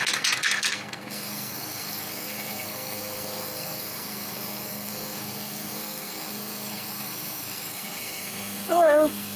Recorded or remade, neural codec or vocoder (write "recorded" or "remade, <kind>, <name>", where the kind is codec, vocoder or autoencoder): remade, codec, SNAC